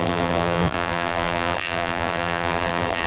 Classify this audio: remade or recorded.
remade